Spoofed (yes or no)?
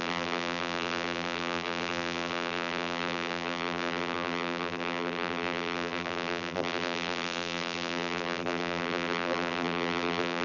yes